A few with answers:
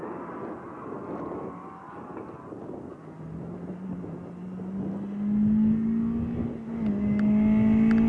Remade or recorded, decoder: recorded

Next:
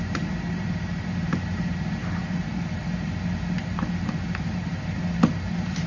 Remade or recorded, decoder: remade, vocoder, BigVGAN v2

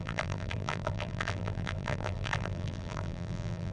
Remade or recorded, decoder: remade, vocoder, BigVGAN v2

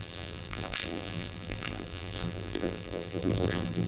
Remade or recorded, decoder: remade, vocoder, BigVGAN v2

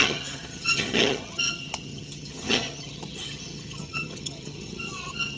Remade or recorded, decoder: remade, vocoder, HiFi-GAN